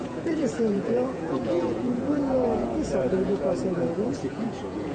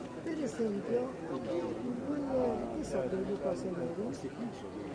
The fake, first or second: first